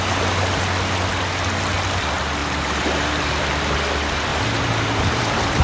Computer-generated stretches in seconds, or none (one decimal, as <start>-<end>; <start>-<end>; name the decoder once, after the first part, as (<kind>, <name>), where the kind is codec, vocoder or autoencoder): 2.4-3.5 (vocoder, BigVGAN v2); 4.3-5.6